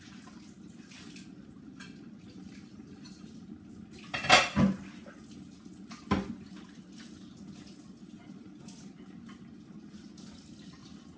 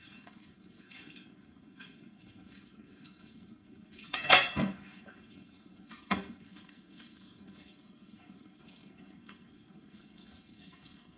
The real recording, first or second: first